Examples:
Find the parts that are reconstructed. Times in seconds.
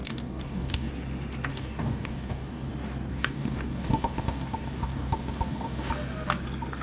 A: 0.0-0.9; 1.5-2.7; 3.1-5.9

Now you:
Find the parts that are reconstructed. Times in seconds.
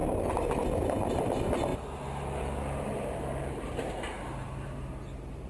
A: 1.1-1.7; 2.4-5.5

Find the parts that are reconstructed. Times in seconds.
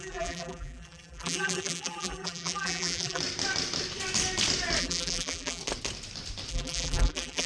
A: 0.0-3.2; 4.8-5.6; 6.5-7.5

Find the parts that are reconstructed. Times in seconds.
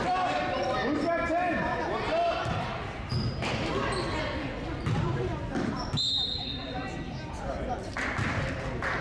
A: none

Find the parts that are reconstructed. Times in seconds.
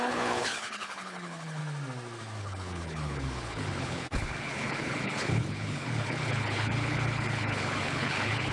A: 0.0-1.6; 2.4-8.5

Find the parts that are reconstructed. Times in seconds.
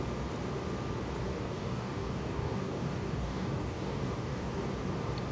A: 1.3-4.5